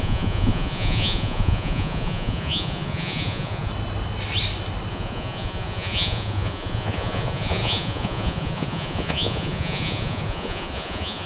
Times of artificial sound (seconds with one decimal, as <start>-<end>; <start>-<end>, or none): 0.0-3.7; 4.9-11.3

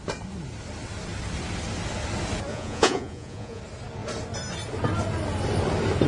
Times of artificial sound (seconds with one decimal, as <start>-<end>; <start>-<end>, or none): 2.5-3.6

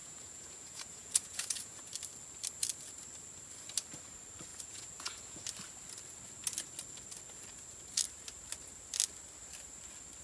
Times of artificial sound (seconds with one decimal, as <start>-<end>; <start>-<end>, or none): 0.0-1.9; 4.5-5.4